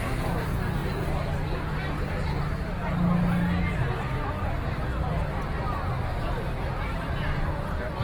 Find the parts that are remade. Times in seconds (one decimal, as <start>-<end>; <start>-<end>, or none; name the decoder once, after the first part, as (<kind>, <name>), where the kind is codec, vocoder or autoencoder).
0.8-2.3 (vocoder, BigVGAN v2)